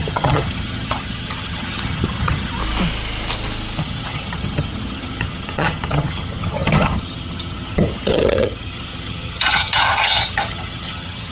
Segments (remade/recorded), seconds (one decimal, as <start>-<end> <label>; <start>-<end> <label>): 0.0-2.6 remade; 2.6-3.8 recorded; 3.8-11.3 remade